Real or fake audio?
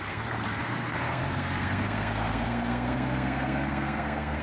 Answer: fake